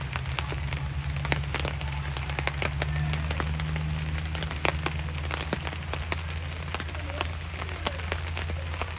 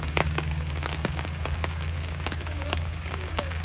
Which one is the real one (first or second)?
first